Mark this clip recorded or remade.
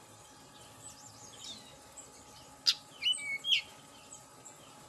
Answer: recorded